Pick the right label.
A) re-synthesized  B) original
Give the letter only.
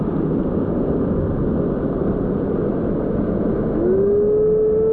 B